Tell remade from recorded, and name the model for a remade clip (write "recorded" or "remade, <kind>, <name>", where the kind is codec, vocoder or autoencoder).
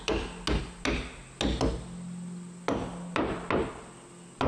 recorded